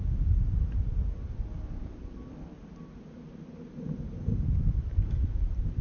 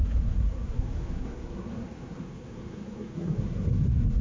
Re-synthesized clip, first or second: second